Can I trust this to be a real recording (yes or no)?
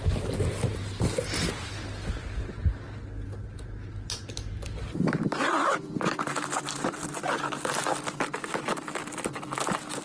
yes